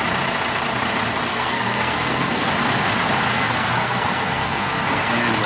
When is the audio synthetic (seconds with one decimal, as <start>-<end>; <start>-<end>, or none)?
1.3-2.5; 3.3-5.1